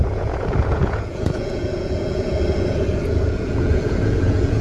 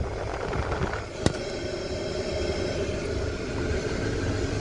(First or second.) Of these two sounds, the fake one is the first